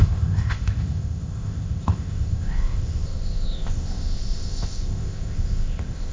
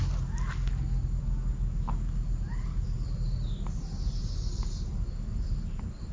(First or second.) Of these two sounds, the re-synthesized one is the first